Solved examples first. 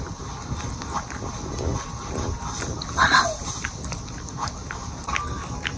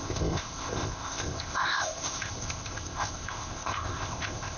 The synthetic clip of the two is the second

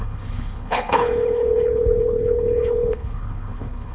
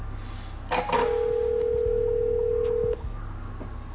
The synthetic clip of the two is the first